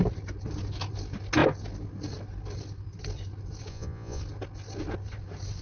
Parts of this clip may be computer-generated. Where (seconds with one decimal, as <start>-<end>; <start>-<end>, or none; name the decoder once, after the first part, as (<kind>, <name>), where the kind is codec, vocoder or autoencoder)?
3.7-4.2 (vocoder, Vocos)